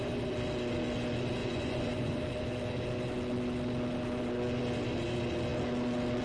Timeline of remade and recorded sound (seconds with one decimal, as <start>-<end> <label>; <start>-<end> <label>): 0.0-1.4 recorded; 1.4-2.2 remade; 2.2-6.2 recorded

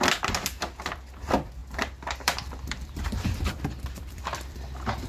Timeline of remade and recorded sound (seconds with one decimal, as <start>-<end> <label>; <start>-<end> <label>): 0.0-1.6 recorded; 1.6-5.1 remade

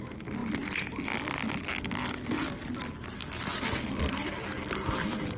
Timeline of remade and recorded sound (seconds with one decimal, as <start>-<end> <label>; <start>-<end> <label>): 0.0-5.4 recorded

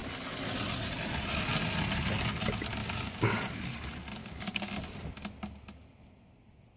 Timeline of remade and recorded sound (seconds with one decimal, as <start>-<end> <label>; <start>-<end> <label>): 0.0-2.8 recorded; 2.8-3.4 remade; 3.4-4.2 recorded; 4.2-4.7 remade; 4.7-6.8 recorded

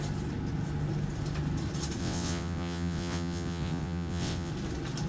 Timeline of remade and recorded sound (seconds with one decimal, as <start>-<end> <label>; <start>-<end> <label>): 0.0-2.0 recorded; 2.0-4.5 remade; 4.5-5.1 recorded